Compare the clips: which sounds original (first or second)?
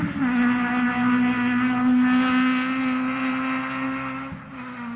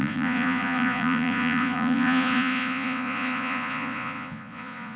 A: first